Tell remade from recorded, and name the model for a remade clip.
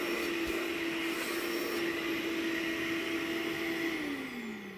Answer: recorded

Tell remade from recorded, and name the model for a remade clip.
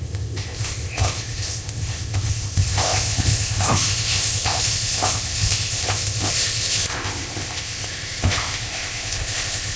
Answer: remade, codec, ZipCodec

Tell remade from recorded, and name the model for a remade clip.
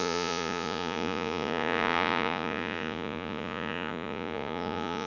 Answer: remade, vocoder, Vocos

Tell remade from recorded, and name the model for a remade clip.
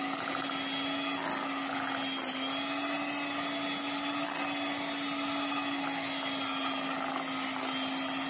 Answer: recorded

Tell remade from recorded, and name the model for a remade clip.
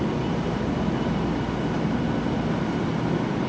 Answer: recorded